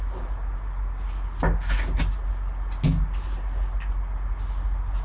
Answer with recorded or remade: recorded